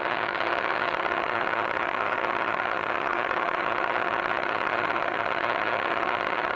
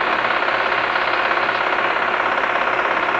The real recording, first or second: second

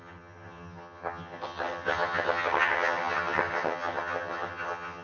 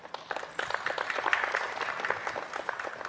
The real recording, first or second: second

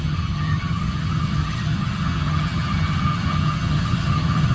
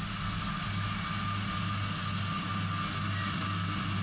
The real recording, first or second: second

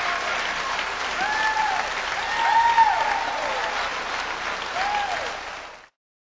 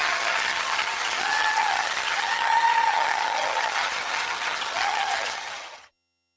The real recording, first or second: first